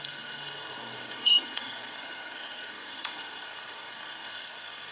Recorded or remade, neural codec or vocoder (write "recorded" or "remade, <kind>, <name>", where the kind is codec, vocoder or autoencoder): remade, codec, SNAC